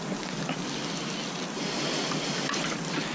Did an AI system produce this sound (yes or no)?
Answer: no